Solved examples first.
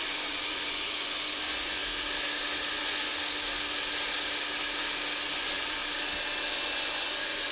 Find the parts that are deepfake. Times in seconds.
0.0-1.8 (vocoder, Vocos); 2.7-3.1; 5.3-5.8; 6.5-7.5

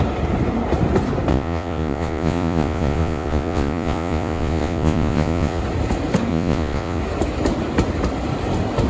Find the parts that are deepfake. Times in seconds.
1.3-5.6 (vocoder, Vocos); 6.3-7.0

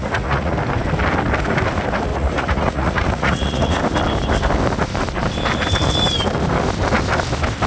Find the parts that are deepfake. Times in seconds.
0.0-0.5 (vocoder, Vocos); 2.1-3.8

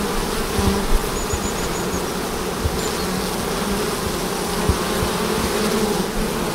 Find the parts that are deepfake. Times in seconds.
none

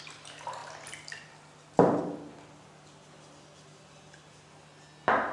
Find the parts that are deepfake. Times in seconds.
none

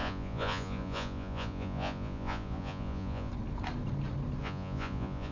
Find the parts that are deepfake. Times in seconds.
0.0-3.3 (vocoder, Vocos); 4.4-5.3